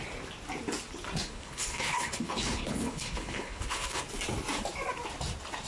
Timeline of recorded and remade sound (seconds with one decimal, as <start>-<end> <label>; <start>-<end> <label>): 0.0-1.2 recorded; 1.2-4.0 remade; 4.0-5.7 recorded